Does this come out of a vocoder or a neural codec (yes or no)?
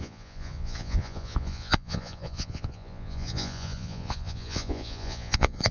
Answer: yes